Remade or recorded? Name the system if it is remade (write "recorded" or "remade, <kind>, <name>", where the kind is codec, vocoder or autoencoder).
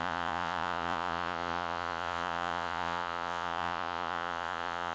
remade, vocoder, Vocos